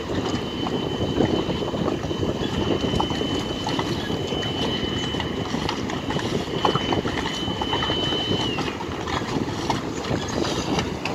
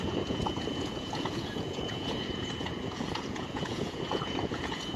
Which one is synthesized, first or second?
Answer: second